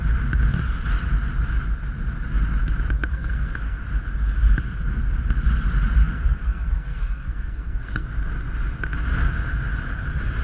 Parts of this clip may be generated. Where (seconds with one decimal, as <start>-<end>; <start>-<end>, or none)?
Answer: 3.1-3.8; 6.0-8.1